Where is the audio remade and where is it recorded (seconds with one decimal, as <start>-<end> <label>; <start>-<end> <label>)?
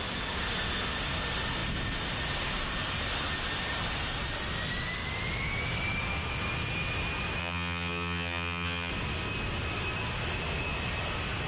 0.0-7.4 recorded; 7.4-8.9 remade; 8.9-11.5 recorded